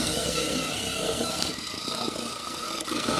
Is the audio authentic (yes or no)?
no